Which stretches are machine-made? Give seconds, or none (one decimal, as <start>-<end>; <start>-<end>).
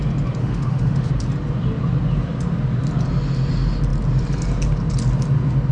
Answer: 0.4-1.1